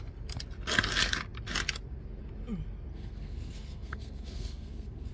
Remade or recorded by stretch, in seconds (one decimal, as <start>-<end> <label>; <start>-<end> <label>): 0.0-2.9 recorded; 2.9-5.1 remade